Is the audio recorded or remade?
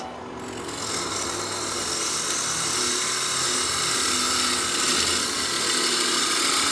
recorded